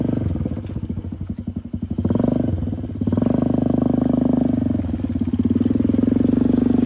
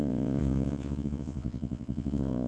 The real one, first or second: first